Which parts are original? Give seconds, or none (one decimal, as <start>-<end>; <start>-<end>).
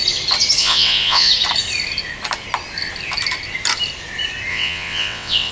0.0-0.6; 1.3-4.5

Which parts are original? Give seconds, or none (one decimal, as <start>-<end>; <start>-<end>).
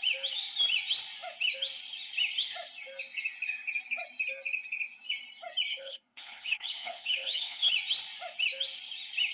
0.0-5.7; 7.7-9.3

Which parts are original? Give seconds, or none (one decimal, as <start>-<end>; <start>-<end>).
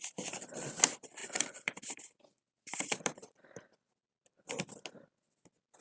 0.0-1.2; 4.7-5.8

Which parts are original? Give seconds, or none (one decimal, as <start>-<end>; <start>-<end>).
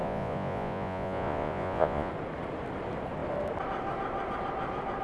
2.1-5.0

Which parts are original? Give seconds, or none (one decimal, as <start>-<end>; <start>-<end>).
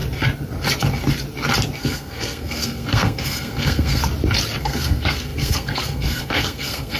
0.0-1.8; 4.0-4.6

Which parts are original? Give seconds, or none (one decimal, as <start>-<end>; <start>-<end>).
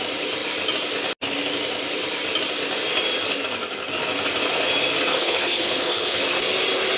0.0-5.1; 6.2-7.0